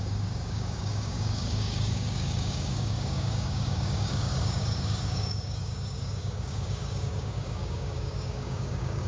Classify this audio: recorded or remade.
remade